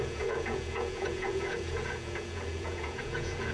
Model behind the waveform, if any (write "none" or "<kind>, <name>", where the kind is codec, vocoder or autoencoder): vocoder, Vocos